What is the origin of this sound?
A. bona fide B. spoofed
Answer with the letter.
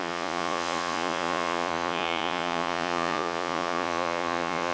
B